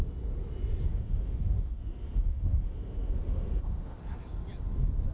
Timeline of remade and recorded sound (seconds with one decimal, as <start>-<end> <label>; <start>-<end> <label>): 0.0-0.9 recorded; 0.9-4.0 remade; 4.0-5.1 recorded